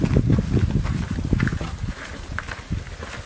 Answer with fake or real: real